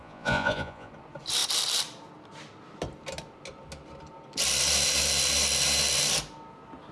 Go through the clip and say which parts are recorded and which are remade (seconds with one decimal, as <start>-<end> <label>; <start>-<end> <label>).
0.0-0.9 remade; 0.9-6.9 recorded